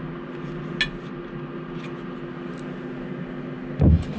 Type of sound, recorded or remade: recorded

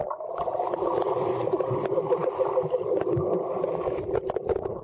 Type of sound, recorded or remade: recorded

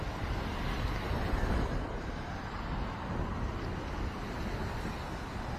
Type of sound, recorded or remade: recorded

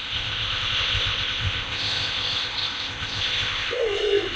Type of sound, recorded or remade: remade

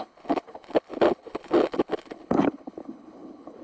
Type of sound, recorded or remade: remade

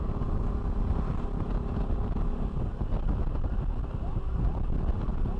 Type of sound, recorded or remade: recorded